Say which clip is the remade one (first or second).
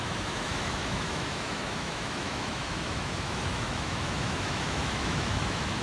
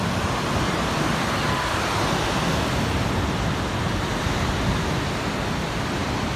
first